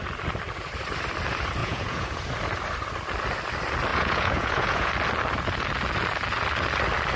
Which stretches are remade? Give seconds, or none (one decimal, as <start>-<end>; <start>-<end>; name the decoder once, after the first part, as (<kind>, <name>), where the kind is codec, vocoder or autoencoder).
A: 1.6-2.3 (vocoder, Vocos); 3.9-4.9